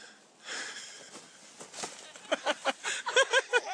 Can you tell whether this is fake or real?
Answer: real